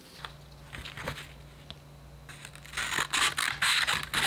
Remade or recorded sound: recorded